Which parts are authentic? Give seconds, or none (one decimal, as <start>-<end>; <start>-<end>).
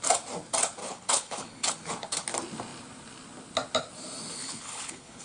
0.0-0.8; 1.7-4.4